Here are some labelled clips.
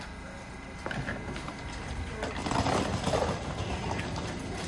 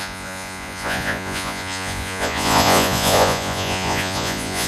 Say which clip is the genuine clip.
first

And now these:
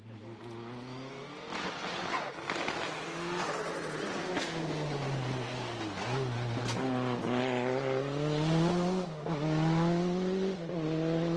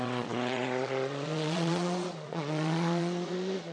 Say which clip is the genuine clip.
first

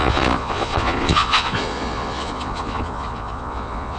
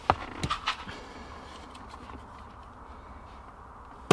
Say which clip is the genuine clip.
second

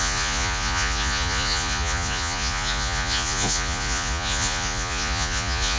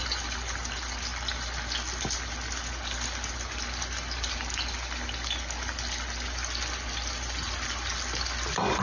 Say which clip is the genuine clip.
second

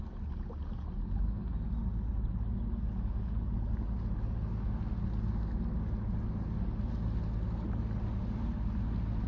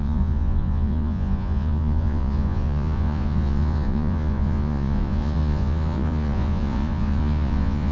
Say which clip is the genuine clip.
first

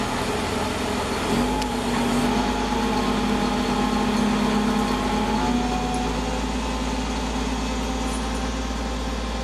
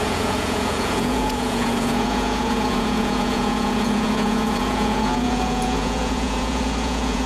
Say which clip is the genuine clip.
first